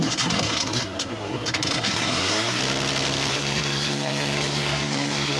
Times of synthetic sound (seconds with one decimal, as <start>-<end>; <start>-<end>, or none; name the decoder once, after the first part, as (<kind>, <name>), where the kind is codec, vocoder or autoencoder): 0.0-2.6 (codec, SNAC); 3.3-5.4